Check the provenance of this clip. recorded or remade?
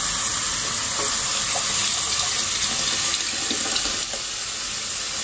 recorded